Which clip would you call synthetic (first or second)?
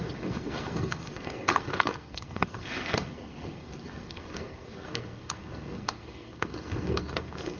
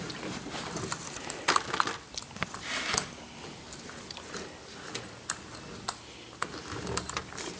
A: first